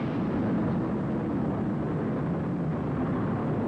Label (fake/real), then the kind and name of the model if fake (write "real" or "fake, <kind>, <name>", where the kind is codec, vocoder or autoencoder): real